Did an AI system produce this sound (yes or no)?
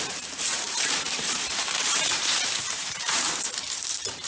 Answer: yes